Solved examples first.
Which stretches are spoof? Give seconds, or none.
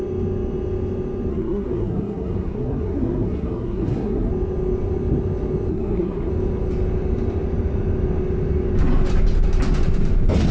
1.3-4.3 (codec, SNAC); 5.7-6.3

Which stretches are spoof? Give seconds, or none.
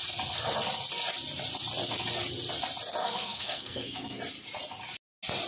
3.0-4.2 (codec, SNAC)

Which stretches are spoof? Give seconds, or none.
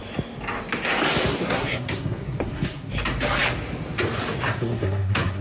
1.3-2.9 (codec, SNAC); 4.5-5.4